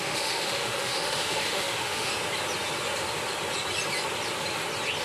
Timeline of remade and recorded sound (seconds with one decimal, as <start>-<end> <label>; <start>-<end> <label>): 0.0-2.1 remade; 2.1-5.0 recorded